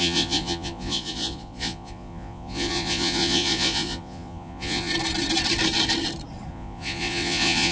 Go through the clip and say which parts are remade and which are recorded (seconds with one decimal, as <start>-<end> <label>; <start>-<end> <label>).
0.0-4.9 remade; 4.9-6.5 recorded; 6.5-7.7 remade